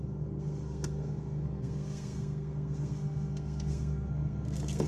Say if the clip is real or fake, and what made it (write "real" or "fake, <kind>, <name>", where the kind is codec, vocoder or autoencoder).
fake, codec, SNAC